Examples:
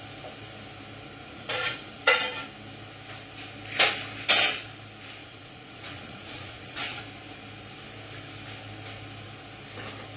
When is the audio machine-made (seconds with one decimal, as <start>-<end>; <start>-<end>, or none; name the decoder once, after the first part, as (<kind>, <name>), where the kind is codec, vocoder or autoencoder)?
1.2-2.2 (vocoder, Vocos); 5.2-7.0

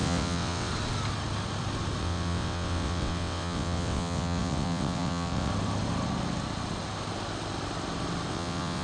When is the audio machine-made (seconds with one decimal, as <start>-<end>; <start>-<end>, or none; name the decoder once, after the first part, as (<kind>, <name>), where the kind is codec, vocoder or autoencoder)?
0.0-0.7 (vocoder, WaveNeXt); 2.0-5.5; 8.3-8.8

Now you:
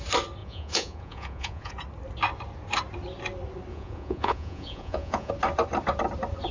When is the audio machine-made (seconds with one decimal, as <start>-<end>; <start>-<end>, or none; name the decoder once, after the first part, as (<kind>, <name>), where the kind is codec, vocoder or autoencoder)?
0.4-1.7 (vocoder, Vocos); 3.7-5.3